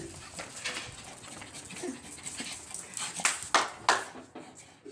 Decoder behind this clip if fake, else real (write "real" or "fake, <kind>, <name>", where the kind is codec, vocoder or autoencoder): real